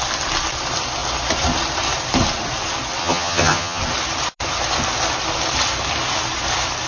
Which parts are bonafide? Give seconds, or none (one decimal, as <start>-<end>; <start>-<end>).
0.0-3.0; 3.8-6.9